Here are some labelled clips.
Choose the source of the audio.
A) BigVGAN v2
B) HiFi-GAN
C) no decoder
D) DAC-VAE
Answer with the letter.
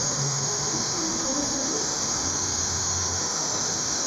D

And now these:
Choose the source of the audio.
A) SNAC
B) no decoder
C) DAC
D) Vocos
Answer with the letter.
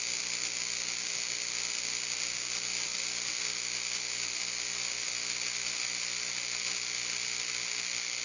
B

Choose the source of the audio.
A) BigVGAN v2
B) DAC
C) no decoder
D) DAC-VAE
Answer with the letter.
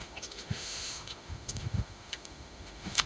D